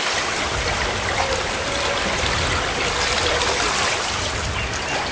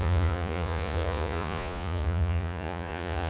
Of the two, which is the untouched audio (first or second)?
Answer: first